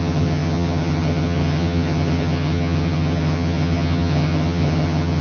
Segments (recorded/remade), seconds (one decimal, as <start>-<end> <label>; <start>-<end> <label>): 0.0-5.2 remade